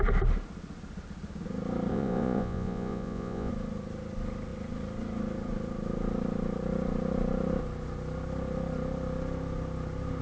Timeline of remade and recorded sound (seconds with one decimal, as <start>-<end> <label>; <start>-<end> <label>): 0.0-1.9 recorded; 1.9-3.5 remade; 3.5-10.2 recorded